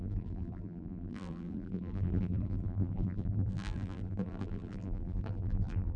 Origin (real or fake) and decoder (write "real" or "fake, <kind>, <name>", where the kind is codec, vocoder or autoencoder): fake, vocoder, BigVGAN v2